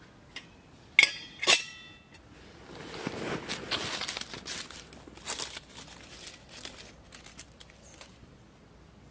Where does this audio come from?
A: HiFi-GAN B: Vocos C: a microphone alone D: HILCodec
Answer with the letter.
C